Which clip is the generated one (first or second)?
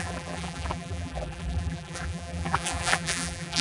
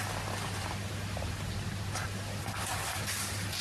first